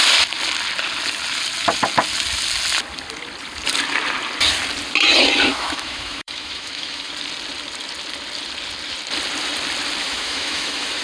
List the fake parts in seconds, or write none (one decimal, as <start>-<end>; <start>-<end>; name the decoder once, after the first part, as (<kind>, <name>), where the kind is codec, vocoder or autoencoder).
5.5-7.1 (autoencoder, DAC-VAE); 10.0-11.0